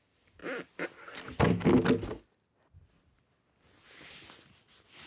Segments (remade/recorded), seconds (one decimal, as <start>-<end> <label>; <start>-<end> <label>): 0.0-5.1 recorded